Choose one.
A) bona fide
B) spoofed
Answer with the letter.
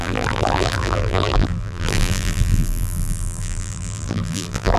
B